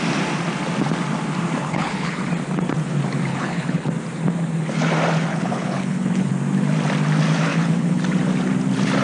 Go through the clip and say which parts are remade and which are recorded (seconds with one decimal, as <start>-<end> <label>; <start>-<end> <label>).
0.0-1.6 recorded; 1.6-2.2 remade; 2.2-3.3 recorded; 3.3-3.9 remade; 3.9-5.3 recorded; 5.3-6.3 remade; 6.3-7.5 recorded; 7.5-8.0 remade; 8.0-9.0 recorded